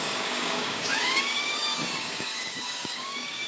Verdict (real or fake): fake